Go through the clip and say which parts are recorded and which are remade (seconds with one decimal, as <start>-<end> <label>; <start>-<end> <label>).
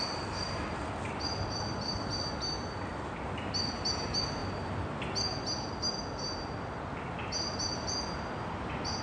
0.0-9.0 recorded